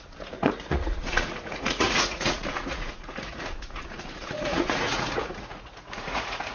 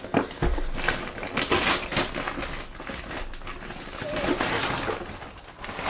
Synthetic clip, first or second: first